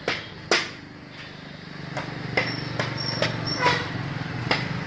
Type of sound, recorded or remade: recorded